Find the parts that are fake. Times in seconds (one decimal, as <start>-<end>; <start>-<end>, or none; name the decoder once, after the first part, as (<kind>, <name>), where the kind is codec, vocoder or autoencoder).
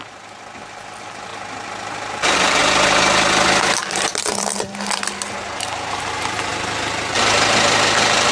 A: 0.0-1.3 (vocoder, BigVGAN v2); 2.1-2.6; 3.6-8.3